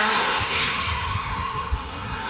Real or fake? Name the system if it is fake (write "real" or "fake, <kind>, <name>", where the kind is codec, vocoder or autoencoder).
fake, codec, SNAC